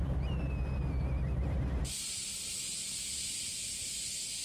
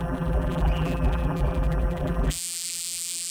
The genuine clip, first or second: first